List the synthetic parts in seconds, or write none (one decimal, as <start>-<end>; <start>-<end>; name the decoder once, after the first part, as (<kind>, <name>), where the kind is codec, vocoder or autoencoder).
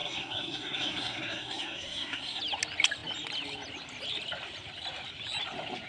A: 0.0-2.4 (codec, SNAC)